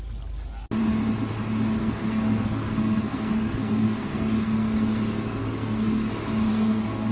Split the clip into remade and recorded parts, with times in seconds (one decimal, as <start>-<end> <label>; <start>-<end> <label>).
0.0-1.8 recorded; 1.8-6.1 remade; 6.1-6.5 recorded; 6.5-7.1 remade